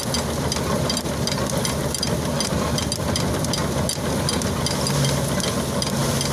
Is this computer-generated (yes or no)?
no